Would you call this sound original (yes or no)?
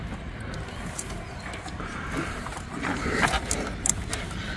yes